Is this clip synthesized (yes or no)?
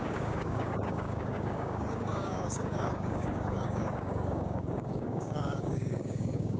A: yes